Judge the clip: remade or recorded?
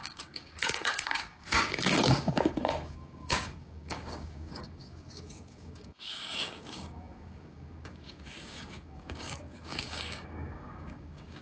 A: remade